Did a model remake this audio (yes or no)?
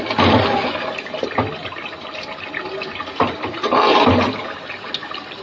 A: no